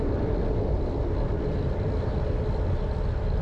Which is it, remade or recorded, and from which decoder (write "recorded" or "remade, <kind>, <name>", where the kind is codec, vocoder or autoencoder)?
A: recorded